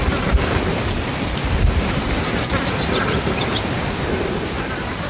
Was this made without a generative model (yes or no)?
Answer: yes